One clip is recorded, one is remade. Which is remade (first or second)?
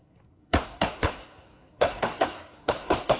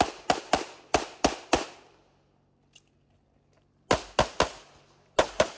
first